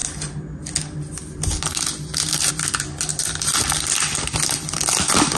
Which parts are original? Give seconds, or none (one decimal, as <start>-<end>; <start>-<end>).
0.0-5.4